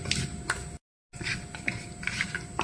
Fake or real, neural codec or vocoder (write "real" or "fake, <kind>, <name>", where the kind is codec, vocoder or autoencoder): real